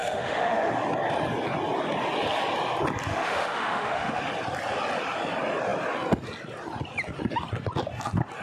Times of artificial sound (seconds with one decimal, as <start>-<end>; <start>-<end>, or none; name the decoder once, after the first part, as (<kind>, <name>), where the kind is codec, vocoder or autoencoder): 0.0-0.7 (autoencoder, DAC-VAE); 3.1-4.2